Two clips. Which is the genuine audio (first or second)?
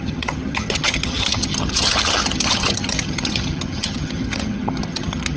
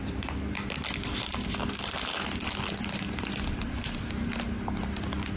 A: second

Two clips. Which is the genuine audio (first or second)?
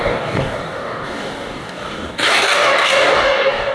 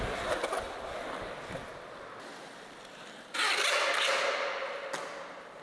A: second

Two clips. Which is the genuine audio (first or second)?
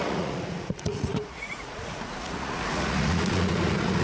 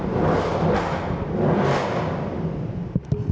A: second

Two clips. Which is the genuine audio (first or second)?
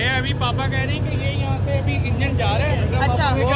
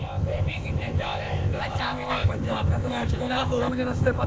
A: first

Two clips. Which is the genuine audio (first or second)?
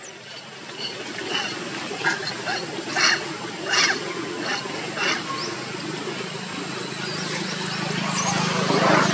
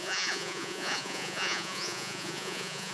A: first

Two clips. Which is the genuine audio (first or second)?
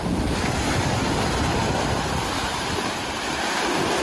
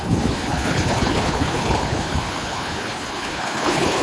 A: first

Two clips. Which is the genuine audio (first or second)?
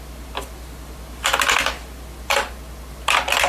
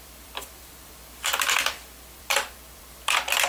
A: first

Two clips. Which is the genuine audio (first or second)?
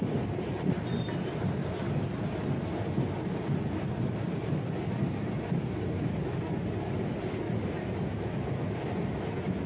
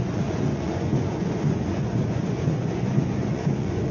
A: first